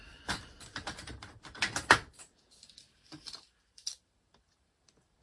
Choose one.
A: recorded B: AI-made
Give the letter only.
B